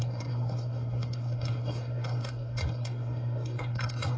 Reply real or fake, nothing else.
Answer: fake